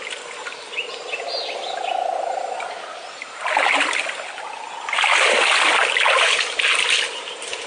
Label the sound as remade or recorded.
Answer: recorded